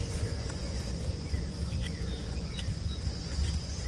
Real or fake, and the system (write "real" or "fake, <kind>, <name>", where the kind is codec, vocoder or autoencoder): fake, vocoder, Vocos